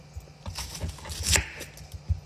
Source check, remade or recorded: recorded